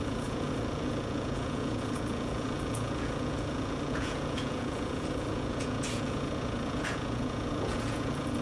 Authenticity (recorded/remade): remade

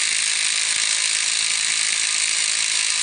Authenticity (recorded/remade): recorded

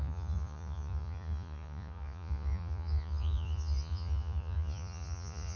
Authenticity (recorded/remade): remade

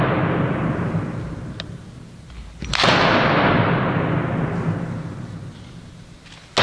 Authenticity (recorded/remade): recorded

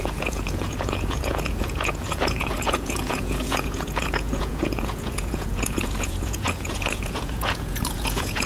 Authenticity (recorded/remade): remade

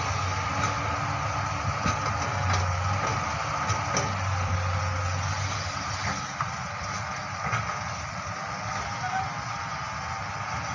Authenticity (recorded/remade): recorded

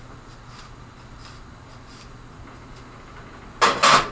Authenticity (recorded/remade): recorded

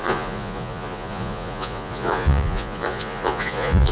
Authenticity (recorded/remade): remade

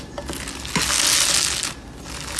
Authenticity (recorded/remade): recorded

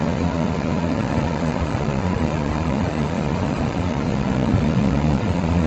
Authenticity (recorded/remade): remade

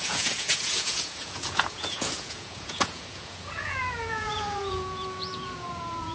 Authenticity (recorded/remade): remade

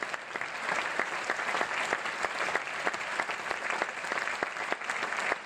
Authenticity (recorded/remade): recorded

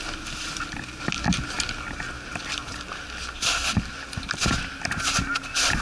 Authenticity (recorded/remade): recorded